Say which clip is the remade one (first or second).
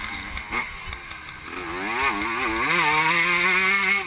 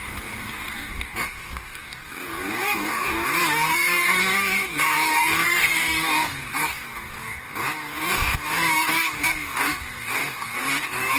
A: second